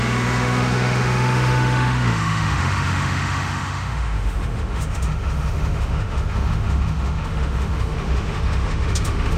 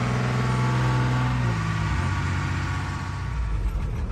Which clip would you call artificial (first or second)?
first